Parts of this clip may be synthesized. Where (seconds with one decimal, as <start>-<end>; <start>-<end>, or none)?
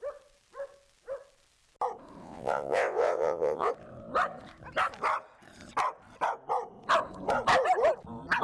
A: 2.2-3.7